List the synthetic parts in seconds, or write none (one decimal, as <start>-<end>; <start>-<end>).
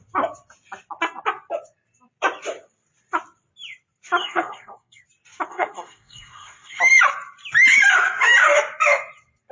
4.2-5.0; 5.5-6.8